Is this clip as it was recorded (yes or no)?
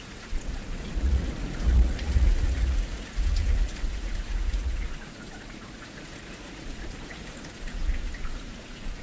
no